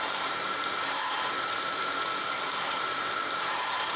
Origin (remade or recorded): remade